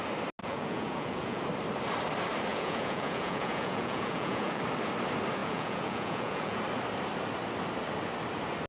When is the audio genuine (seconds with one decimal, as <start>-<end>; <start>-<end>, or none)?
0.0-0.4; 1.4-2.5; 4.6-5.4; 6.6-8.7